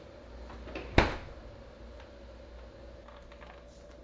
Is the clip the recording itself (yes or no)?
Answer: yes